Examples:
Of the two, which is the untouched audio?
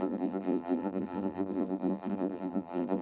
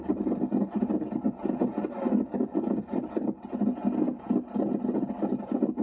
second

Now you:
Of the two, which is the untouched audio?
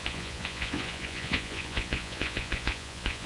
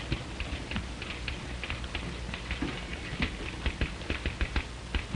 second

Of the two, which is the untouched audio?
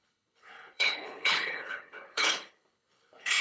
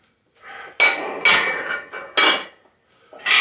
second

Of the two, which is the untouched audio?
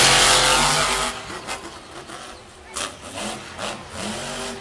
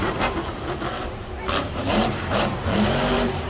first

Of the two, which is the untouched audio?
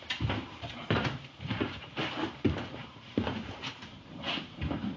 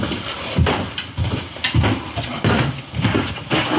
second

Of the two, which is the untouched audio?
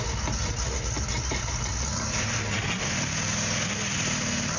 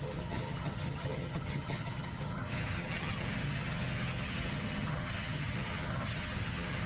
first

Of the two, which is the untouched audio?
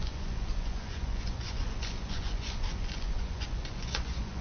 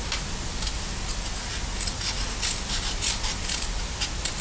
second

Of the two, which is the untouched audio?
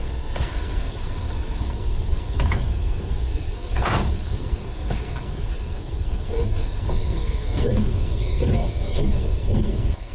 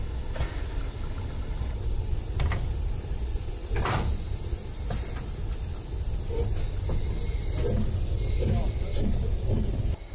second